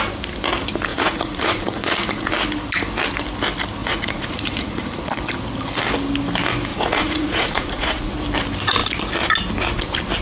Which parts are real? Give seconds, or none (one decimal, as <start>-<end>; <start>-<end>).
0.0-0.9; 2.3-3.8; 5.0-6.7; 8.1-10.2